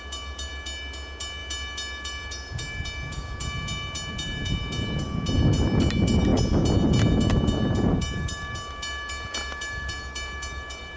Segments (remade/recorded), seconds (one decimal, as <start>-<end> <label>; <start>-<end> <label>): 0.0-11.0 recorded